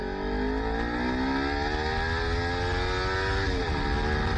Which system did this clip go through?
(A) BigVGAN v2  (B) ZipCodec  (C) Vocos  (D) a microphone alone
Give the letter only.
D